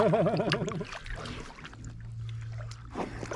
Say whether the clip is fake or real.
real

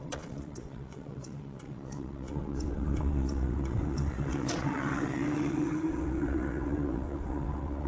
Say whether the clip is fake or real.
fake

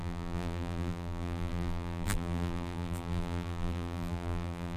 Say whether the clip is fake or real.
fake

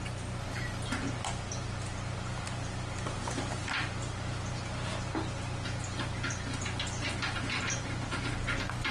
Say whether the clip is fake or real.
real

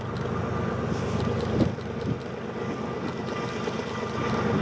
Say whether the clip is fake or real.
real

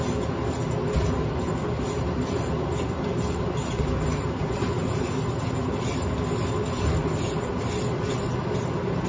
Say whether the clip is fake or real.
real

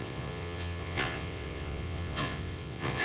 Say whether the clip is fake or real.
fake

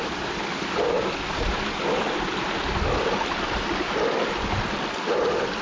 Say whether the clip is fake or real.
real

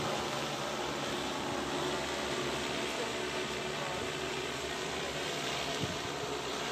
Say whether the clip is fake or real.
real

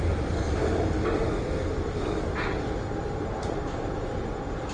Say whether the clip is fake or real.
real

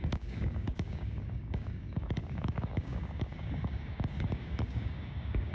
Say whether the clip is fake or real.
fake